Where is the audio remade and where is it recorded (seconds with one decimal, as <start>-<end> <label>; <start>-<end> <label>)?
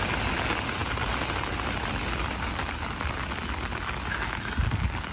0.0-5.1 recorded